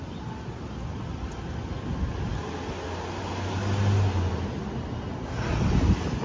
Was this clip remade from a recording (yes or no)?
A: no